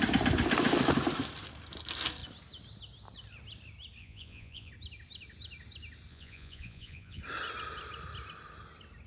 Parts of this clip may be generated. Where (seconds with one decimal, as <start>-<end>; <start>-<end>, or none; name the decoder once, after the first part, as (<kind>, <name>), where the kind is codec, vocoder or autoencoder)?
4.0-4.7 (vocoder, Vocos); 6.1-7.2